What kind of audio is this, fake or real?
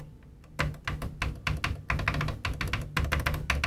real